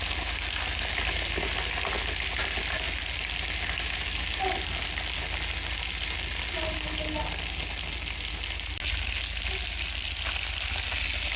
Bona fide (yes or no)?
yes